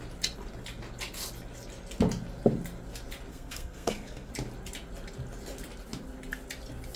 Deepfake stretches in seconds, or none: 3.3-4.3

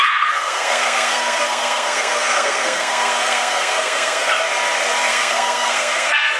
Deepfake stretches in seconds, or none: 0.0-4.3; 5.1-6.4